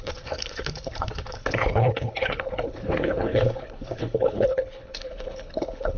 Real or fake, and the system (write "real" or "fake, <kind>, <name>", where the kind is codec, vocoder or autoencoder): fake, codec, HILCodec